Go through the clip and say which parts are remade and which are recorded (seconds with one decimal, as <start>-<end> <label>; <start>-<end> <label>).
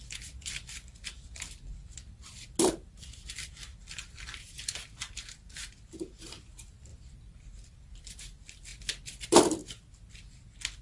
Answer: 0.0-2.2 remade; 2.2-2.9 recorded; 2.9-8.7 remade; 8.7-9.2 recorded; 9.2-9.6 remade; 9.6-10.8 recorded